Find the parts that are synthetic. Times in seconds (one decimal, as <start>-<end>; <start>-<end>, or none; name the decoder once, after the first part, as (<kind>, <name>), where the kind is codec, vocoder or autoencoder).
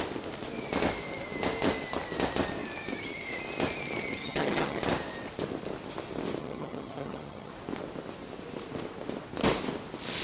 4.2-4.8 (vocoder, HiFi-GAN); 6.4-7.5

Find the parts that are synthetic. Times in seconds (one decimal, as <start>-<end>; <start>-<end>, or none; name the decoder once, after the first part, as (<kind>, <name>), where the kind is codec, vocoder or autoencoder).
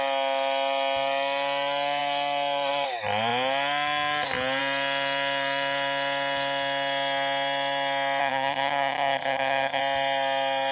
8.2-9.8 (vocoder, HiFi-GAN)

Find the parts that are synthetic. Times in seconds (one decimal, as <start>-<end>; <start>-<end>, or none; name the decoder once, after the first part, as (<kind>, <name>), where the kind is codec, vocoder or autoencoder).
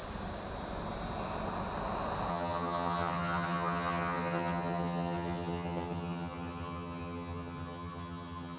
2.3-8.6 (vocoder, HiFi-GAN)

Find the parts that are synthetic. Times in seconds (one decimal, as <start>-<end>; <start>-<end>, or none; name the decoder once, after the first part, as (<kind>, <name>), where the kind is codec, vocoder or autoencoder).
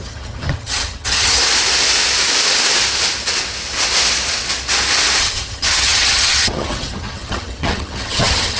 0.0-1.4 (vocoder, HiFi-GAN); 5.2-8.6